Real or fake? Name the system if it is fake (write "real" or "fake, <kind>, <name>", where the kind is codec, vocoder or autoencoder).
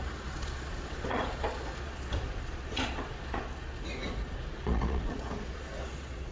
fake, vocoder, Vocos